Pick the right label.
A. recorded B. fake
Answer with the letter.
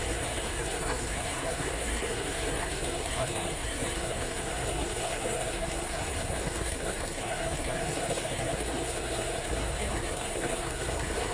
B